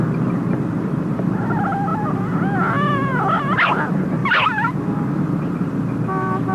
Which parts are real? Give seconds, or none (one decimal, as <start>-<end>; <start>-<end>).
0.0-6.5